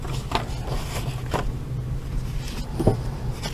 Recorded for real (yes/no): yes